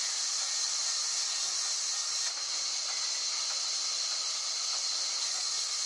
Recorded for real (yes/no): yes